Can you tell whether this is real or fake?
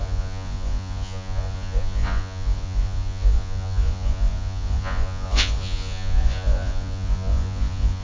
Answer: fake